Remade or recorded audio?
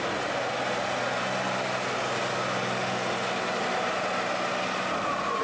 recorded